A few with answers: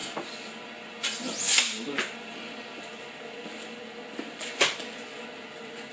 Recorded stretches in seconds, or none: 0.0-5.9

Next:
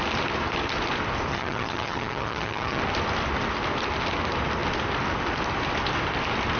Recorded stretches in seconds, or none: 0.0-1.3; 2.8-6.6

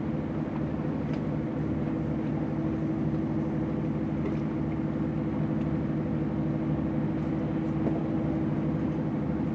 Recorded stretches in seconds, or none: 0.0-9.5

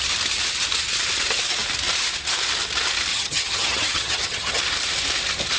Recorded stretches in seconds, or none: 0.0-3.1; 4.6-5.6

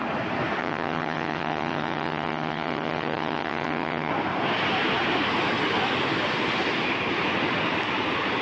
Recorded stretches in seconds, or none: 0.0-0.6; 4.1-8.4